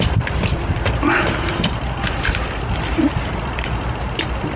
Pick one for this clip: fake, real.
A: fake